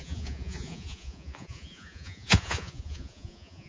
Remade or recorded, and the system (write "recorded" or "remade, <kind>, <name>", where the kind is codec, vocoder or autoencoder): remade, vocoder, Vocos